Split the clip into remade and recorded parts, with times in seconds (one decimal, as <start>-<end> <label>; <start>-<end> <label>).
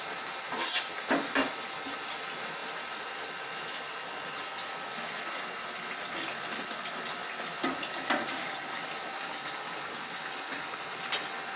0.0-11.6 recorded